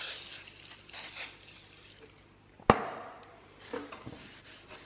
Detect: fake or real real